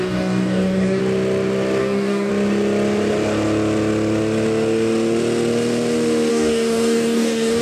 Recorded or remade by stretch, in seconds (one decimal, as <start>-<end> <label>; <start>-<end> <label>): 0.0-1.0 remade; 1.0-1.8 recorded; 1.8-2.3 remade; 2.3-6.3 recorded; 6.3-7.6 remade